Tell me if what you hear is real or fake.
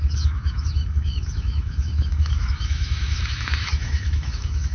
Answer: fake